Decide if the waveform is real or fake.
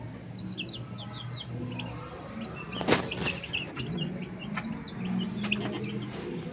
real